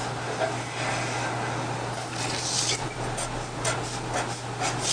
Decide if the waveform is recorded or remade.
recorded